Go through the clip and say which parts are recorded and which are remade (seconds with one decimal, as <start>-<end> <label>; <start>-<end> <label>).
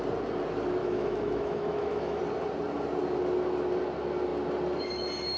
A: 0.0-0.8 recorded; 0.8-2.2 remade; 2.2-5.4 recorded